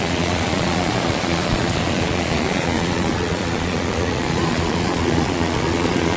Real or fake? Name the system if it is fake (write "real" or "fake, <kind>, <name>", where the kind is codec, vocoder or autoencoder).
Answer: fake, vocoder, Vocos